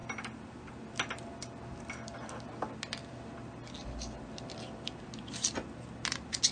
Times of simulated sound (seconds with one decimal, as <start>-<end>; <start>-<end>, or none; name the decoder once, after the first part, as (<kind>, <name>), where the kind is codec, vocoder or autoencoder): none